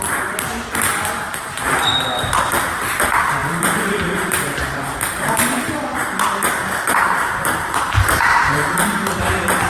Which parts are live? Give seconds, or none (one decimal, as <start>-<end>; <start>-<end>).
0.0-0.9; 1.6-3.4; 8.5-9.7